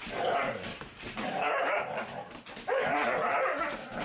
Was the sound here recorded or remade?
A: recorded